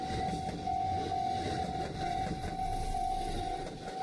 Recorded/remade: recorded